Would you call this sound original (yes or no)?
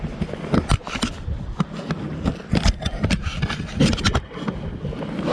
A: yes